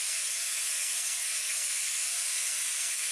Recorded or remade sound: remade